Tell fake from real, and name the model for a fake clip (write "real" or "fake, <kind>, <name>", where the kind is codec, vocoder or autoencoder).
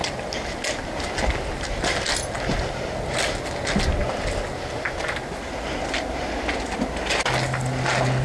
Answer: real